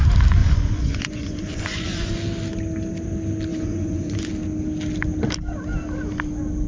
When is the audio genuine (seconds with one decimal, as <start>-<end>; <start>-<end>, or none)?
0.0-0.4; 2.1-3.5; 4.3-6.7